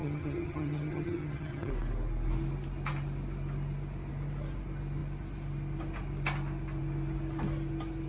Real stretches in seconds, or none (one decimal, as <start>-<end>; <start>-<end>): 1.7-8.1

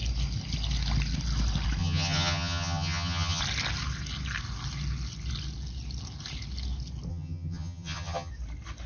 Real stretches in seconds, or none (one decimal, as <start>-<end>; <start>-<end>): 0.0-1.8; 3.4-7.1; 8.3-8.9

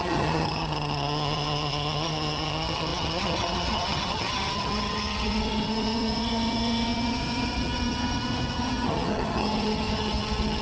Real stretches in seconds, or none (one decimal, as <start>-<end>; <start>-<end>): none

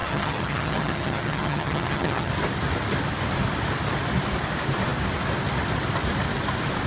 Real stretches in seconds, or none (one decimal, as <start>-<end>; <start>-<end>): 2.3-6.9

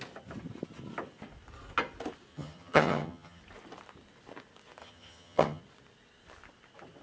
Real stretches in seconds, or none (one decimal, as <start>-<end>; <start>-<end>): 0.0-2.3; 3.4-4.8; 5.6-7.0